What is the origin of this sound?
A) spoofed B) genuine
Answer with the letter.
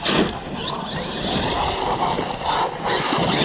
B